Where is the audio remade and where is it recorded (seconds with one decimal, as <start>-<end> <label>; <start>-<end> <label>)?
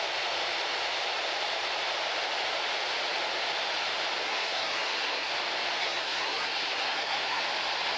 0.0-4.2 recorded; 4.2-5.3 remade; 5.3-5.8 recorded; 5.8-7.4 remade; 7.4-8.0 recorded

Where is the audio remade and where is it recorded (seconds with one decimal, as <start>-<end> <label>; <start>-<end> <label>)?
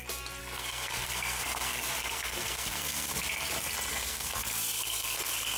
0.0-0.4 recorded; 0.4-3.2 remade; 3.2-3.9 recorded; 3.9-5.6 remade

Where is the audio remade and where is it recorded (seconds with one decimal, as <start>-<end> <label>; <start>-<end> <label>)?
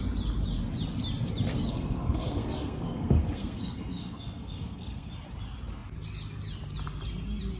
0.0-1.5 recorded; 1.5-5.1 remade; 5.1-7.6 recorded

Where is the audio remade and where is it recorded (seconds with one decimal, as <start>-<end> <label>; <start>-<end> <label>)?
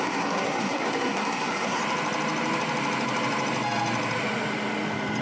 0.0-1.8 remade; 1.8-5.2 recorded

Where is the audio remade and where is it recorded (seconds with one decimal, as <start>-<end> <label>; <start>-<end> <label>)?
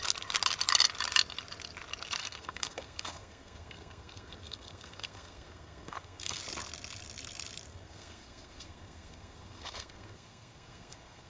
0.0-2.2 recorded; 2.2-6.4 remade; 6.4-7.7 recorded; 7.7-11.3 remade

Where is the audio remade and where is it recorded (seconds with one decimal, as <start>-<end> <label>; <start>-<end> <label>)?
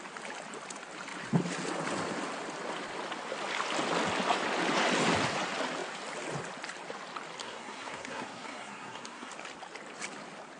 0.0-7.4 recorded; 7.4-9.3 remade; 9.3-10.6 recorded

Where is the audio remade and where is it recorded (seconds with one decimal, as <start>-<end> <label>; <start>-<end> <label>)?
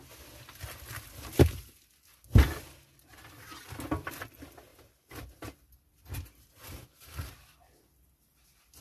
0.0-8.8 recorded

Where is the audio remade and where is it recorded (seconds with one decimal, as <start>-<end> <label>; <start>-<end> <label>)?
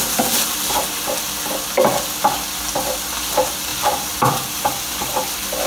0.0-5.7 recorded